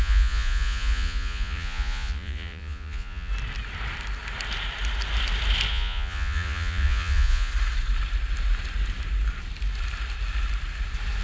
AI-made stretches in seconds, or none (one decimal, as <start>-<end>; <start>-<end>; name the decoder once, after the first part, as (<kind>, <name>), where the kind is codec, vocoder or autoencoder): 0.0-3.3 (vocoder, Vocos); 5.7-7.5